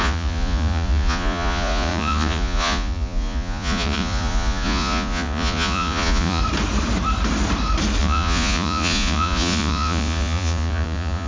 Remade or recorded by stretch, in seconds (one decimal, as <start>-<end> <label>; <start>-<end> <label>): 0.0-6.4 remade; 6.4-8.0 recorded; 8.0-11.3 remade